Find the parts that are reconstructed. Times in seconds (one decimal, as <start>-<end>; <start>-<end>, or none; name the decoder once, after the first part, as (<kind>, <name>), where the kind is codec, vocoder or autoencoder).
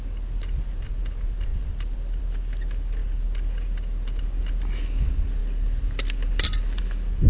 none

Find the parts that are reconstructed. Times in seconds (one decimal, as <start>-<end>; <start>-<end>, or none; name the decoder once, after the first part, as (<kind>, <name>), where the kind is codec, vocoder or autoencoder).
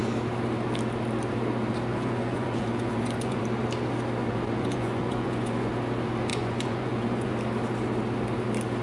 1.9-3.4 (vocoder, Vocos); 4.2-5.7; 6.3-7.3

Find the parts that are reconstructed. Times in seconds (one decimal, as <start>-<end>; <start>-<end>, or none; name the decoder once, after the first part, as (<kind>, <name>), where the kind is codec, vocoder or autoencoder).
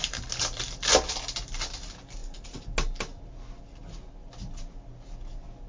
none